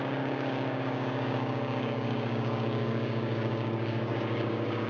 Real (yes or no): no